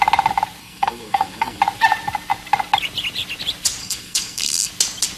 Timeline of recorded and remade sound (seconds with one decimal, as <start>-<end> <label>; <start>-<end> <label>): 0.0-0.6 recorded; 0.6-1.6 remade; 1.6-3.8 recorded; 3.8-4.7 remade; 4.7-5.2 recorded